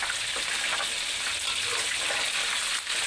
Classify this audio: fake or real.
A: real